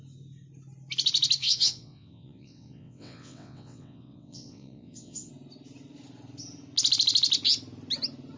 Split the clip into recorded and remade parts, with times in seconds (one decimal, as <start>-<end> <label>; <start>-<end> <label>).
0.0-1.4 recorded; 1.4-5.3 remade; 5.3-8.4 recorded